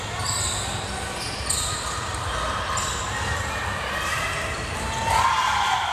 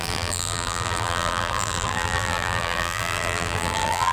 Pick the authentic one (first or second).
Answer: first